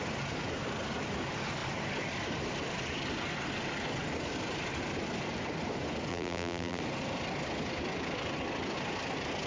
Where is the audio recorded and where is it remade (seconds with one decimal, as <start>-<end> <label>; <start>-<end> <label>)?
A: 0.0-6.1 recorded; 6.1-6.8 remade; 6.8-9.5 recorded